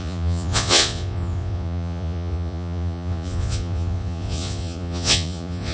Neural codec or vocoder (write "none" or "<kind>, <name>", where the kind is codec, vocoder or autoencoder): vocoder, Vocos